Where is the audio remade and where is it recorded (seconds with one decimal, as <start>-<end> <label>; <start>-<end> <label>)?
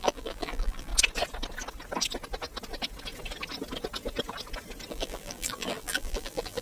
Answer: 0.0-0.9 remade; 0.9-4.9 recorded; 4.9-6.6 remade